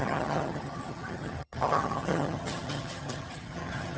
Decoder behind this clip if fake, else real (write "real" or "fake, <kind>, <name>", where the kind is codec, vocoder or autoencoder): fake, vocoder, HiFi-GAN